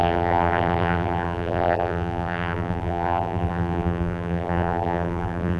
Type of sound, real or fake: fake